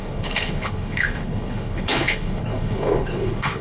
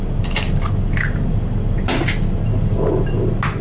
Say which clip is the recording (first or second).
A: second